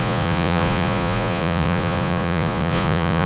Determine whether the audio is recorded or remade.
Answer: remade